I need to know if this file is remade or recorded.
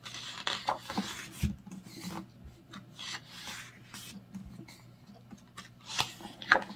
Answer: recorded